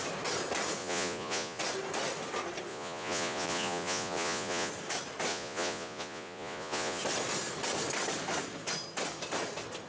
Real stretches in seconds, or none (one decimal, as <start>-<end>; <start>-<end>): 0.0-0.8; 1.6-2.7; 4.7-5.3; 7.0-9.9